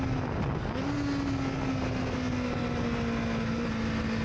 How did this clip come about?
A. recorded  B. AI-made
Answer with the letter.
A